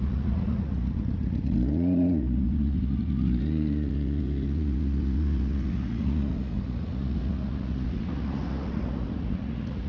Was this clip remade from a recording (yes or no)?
yes